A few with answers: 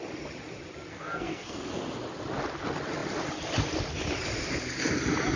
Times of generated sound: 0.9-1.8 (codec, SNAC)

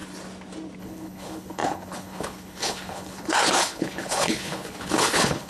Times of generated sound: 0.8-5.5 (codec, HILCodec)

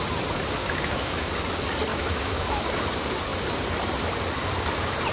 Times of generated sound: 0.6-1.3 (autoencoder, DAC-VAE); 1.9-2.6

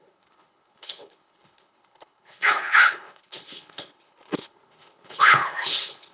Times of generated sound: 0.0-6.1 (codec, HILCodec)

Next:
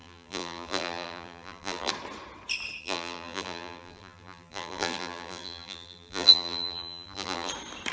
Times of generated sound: 0.0-1.9 (vocoder, BigVGAN v2); 2.8-7.5